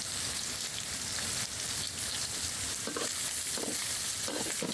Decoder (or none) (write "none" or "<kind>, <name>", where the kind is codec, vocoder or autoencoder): none